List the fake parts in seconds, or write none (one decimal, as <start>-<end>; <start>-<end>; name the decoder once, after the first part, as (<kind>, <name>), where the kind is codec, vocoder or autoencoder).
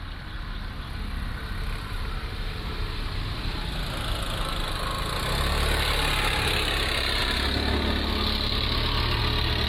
none